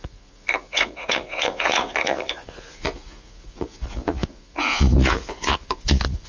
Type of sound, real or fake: fake